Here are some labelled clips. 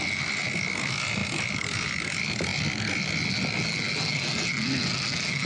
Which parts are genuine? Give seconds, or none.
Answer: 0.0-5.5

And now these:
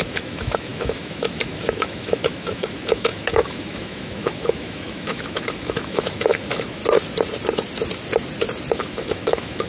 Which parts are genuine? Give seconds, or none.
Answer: 6.8-8.7

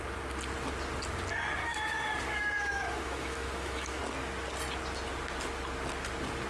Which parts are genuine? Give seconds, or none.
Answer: 0.0-1.6; 4.0-6.5

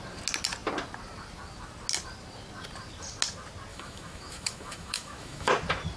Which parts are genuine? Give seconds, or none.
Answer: 0.0-3.7; 5.5-6.0

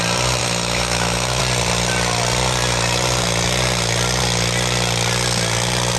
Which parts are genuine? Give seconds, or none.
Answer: 0.0-0.4; 1.4-6.0

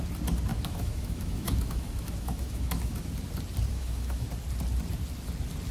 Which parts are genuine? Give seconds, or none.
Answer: 0.0-0.5; 3.1-3.7; 4.3-5.7

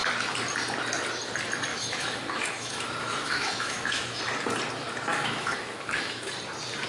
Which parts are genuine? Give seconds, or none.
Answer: 0.0-1.7; 4.2-5.1; 6.3-6.9